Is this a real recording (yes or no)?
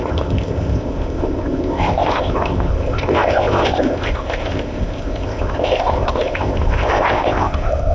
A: no